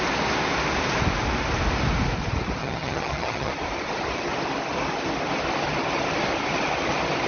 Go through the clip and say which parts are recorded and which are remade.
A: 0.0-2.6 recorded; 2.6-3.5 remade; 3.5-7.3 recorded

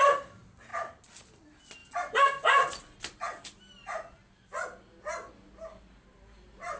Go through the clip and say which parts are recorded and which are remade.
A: 0.0-6.8 recorded

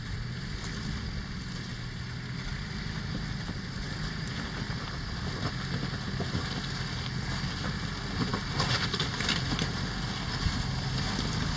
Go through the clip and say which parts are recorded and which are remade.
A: 0.0-11.6 recorded

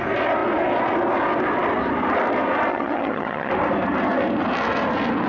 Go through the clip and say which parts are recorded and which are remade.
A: 0.0-2.7 recorded; 2.7-3.5 remade; 3.5-5.3 recorded

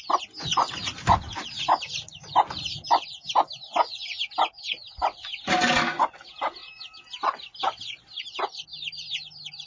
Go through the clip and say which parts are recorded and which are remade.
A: 0.0-9.7 recorded

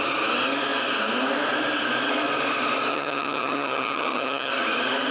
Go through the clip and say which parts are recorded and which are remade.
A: 0.0-2.9 recorded; 2.9-4.5 remade; 4.5-5.1 recorded

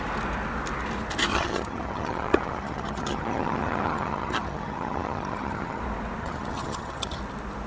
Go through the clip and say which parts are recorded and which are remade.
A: 0.0-1.3 recorded; 1.3-5.8 remade; 5.8-6.2 recorded; 6.2-7.2 remade; 7.2-7.7 recorded